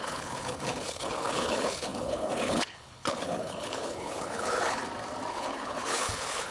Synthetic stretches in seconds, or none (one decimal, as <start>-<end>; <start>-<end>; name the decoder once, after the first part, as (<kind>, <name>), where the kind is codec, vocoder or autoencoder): 0.0-4.8 (codec, HILCodec); 5.3-6.5